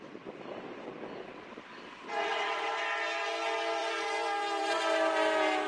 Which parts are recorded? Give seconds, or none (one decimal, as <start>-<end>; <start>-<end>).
0.0-3.8; 4.8-5.7